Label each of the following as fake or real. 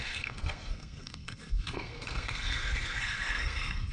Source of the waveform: fake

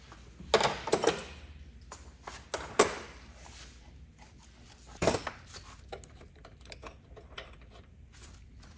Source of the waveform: real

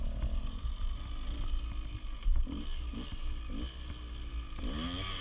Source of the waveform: real